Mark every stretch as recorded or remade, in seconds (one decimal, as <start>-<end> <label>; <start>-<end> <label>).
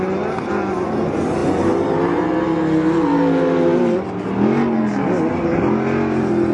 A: 0.0-6.5 recorded